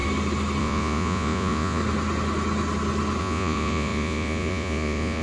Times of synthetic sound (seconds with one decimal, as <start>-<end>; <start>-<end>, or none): 0.6-1.8; 3.2-5.2